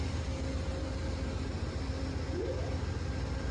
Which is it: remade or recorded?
recorded